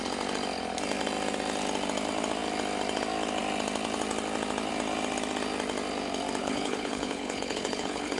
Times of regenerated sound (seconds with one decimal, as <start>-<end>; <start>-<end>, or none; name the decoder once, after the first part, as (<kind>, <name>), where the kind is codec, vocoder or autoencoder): 6.4-8.2 (codec, HILCodec)